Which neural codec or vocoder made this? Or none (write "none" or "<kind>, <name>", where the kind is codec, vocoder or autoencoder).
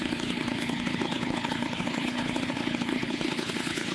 codec, HILCodec